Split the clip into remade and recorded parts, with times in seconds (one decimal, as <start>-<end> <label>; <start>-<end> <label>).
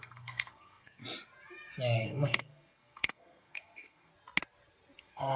0.0-1.0 remade; 1.0-2.0 recorded; 2.0-4.1 remade; 4.1-5.0 recorded; 5.0-5.4 remade